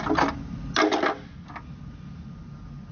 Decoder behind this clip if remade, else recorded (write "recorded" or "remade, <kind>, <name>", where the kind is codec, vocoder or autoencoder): recorded